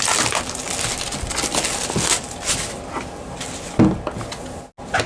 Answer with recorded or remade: recorded